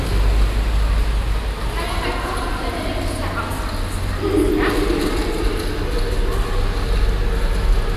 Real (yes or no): yes